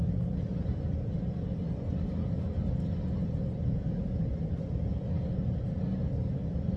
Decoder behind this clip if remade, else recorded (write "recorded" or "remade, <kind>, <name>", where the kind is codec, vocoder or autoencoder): recorded